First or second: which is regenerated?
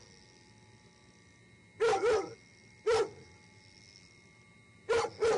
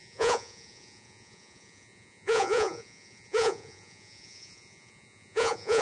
second